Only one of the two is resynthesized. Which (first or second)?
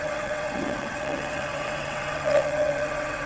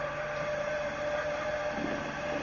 first